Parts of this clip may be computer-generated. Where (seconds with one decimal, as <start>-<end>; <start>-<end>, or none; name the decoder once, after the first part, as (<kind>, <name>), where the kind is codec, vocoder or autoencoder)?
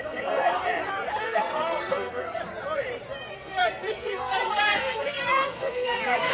0.0-0.6 (codec, SNAC); 1.2-2.4; 3.3-6.3